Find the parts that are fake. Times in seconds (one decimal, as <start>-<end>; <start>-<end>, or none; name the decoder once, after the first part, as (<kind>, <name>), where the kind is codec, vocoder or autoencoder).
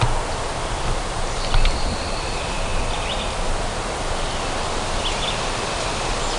none